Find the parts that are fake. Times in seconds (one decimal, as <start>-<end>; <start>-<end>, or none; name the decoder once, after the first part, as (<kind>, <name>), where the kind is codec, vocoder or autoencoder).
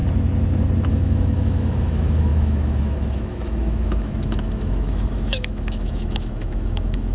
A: 0.9-7.1 (autoencoder, DAC-VAE)